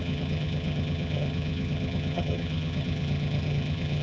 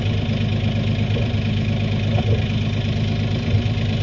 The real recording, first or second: second